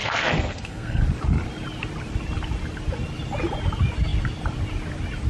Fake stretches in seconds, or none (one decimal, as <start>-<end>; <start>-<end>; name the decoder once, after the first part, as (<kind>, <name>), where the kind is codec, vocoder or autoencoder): 0.0-1.0 (codec, SNAC)